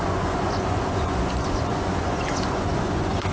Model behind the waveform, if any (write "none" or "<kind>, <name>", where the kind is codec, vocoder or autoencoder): vocoder, Vocos